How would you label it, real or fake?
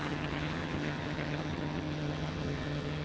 fake